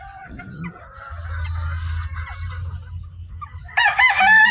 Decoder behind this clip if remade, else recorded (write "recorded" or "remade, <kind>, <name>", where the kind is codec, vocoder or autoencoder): recorded